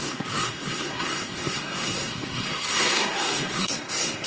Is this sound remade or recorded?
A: remade